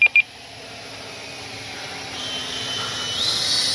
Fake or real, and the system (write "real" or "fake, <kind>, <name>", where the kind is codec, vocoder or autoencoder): real